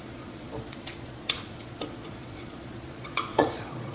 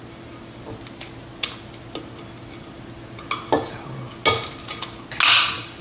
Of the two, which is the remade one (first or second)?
first